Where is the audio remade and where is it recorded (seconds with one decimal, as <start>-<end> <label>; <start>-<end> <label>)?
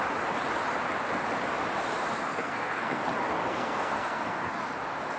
0.0-2.3 recorded; 2.3-3.0 remade; 3.0-3.4 recorded; 3.4-4.6 remade; 4.6-5.2 recorded